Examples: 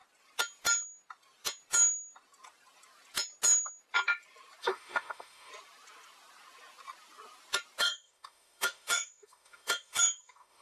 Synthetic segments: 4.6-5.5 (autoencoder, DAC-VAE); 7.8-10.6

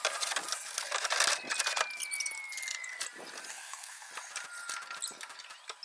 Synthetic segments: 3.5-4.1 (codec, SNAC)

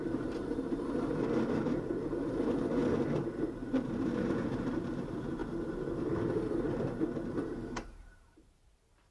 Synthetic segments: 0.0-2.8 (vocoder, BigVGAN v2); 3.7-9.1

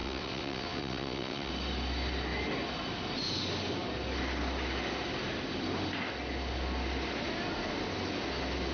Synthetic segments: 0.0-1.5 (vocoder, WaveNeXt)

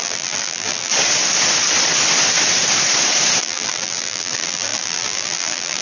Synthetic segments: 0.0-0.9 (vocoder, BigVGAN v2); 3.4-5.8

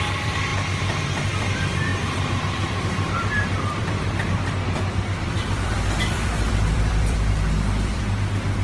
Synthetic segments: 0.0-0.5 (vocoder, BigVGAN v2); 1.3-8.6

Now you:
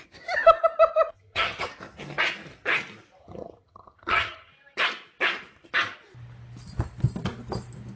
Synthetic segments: 1.1-1.7 (vocoder, HiFi-GAN); 3.2-4.5